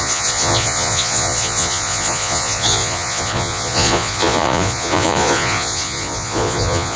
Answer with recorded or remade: remade